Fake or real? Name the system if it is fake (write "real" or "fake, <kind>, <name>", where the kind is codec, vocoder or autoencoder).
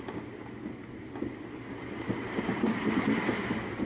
real